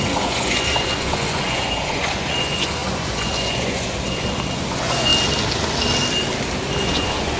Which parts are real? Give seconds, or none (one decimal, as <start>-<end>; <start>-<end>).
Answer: 5.1-6.8